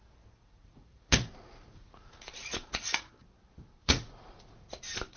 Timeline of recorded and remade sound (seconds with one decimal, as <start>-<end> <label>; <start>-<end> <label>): 0.0-0.4 recorded; 0.4-3.1 remade; 3.1-3.8 recorded; 3.8-4.8 remade; 4.8-5.2 recorded